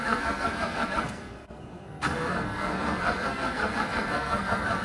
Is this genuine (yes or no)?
no